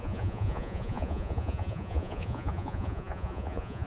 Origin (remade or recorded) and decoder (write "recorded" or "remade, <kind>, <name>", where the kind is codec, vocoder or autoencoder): remade, vocoder, Vocos